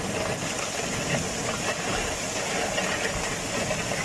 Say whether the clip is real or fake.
real